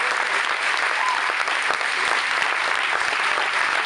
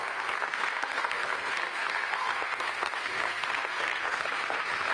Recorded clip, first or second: first